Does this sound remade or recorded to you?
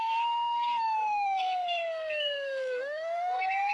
remade